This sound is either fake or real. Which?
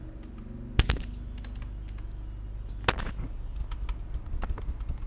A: real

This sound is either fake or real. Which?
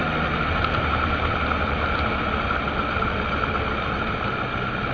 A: real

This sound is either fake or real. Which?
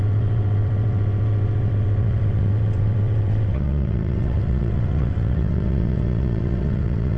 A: fake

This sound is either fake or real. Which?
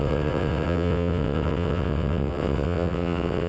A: fake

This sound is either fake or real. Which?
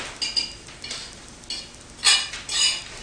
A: real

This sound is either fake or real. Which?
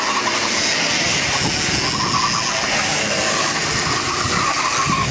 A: real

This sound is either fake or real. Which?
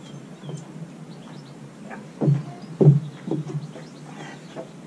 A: real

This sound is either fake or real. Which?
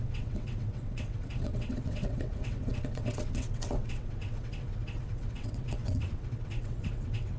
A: fake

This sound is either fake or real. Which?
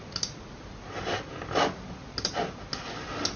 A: real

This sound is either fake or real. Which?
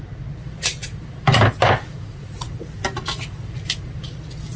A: real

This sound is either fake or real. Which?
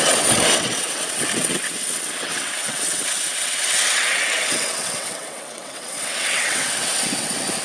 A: fake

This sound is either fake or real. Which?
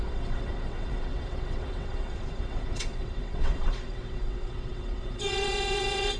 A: fake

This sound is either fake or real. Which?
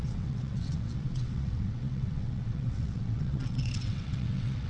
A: fake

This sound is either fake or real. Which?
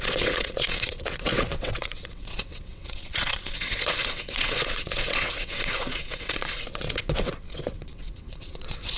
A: fake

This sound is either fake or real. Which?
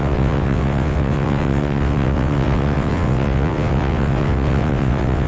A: fake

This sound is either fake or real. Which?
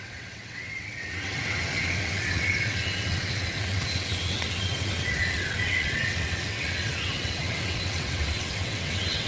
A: fake